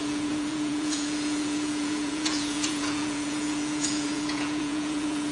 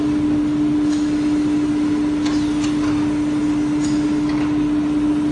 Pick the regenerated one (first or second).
first